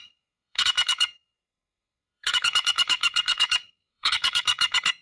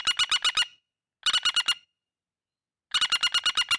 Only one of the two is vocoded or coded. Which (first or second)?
first